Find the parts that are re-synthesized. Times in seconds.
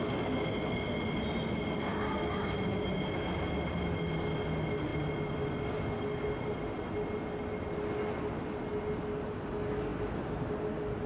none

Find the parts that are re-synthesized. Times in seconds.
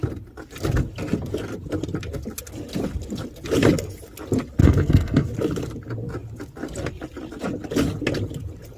4.6-5.3 (codec, SNAC)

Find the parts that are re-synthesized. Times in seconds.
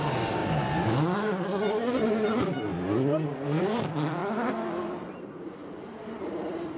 0.0-2.7 (vocoder, BigVGAN v2); 3.3-4.2; 5.0-6.8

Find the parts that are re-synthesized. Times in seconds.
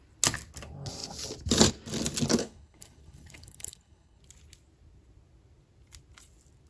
2.4-4.2 (codec, HILCodec)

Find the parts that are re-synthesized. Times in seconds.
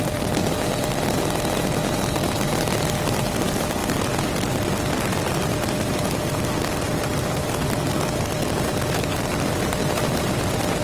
0.0-3.8 (vocoder, BigVGAN v2); 7.0-10.8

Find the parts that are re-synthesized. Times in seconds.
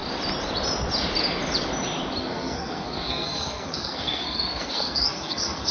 2.2-5.7 (codec, SNAC)